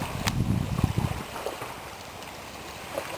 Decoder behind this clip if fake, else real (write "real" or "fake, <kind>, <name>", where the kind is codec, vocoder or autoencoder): real